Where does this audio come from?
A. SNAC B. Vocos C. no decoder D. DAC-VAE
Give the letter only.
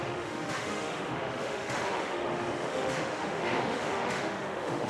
D